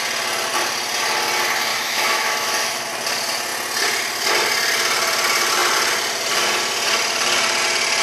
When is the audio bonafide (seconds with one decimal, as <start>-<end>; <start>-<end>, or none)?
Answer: 0.0-1.7; 2.9-8.0